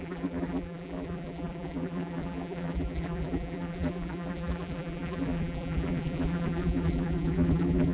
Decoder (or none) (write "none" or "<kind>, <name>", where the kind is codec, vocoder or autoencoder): vocoder, BigVGAN v2